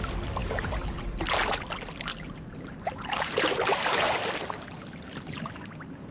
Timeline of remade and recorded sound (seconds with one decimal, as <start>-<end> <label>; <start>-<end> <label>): 0.0-2.1 recorded; 2.1-4.3 remade; 4.3-6.1 recorded

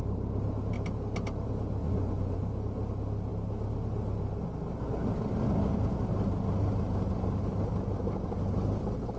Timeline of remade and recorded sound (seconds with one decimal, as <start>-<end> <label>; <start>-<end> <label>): 0.0-1.8 recorded; 1.8-2.4 remade; 2.4-9.2 recorded

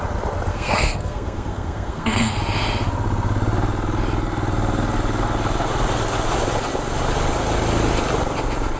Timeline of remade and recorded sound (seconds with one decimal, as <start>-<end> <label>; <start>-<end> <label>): 0.0-0.5 recorded; 0.5-2.4 remade; 2.4-8.8 recorded

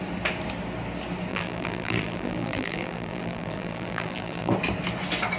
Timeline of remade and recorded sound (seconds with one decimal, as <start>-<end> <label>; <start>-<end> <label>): 0.0-1.3 recorded; 1.3-4.5 remade; 4.5-5.4 recorded